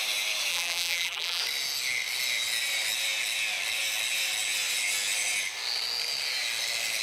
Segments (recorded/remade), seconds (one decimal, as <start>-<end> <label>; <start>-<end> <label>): 0.0-0.5 recorded; 0.5-1.4 remade; 1.4-7.0 recorded